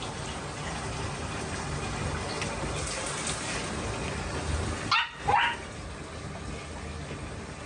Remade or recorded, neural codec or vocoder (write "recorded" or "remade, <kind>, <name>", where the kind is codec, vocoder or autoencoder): recorded